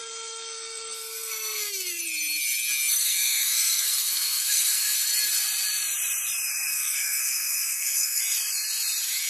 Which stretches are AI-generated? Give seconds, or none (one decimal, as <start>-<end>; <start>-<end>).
0.0-2.0; 3.0-5.0; 6.7-8.2